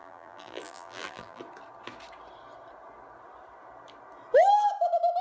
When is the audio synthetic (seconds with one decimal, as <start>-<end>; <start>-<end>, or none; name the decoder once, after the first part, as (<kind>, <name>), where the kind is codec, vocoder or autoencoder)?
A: 0.0-1.4 (vocoder, BigVGAN v2)